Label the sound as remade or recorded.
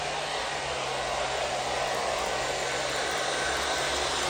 recorded